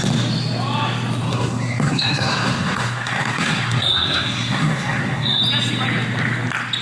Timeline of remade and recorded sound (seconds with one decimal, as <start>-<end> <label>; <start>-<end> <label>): 0.0-1.3 recorded; 1.3-5.4 remade; 5.4-6.8 recorded